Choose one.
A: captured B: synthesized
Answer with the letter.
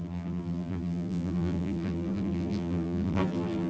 B